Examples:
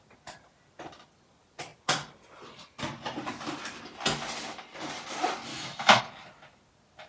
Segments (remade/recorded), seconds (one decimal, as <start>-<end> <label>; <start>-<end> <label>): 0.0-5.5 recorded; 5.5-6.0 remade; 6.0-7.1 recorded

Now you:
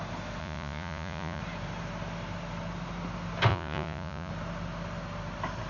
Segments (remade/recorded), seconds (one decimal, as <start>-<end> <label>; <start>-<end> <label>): 0.0-0.4 recorded; 0.4-1.4 remade; 1.4-3.5 recorded; 3.5-4.3 remade; 4.3-5.7 recorded

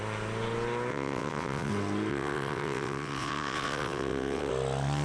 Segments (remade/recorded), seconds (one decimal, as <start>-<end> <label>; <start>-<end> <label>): 0.0-0.9 recorded; 0.9-1.7 remade; 1.7-2.1 recorded; 2.1-4.5 remade; 4.5-5.0 recorded